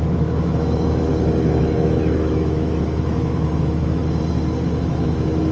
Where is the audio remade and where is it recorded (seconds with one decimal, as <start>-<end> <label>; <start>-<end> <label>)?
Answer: 0.0-1.1 remade; 1.1-1.6 recorded; 1.6-4.0 remade; 4.0-4.8 recorded; 4.8-5.5 remade